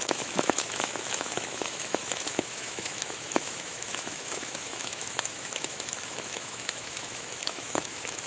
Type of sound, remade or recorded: remade